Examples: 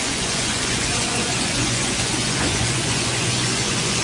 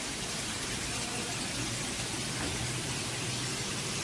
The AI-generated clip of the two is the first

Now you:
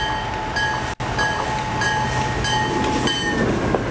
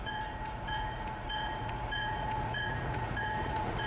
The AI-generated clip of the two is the second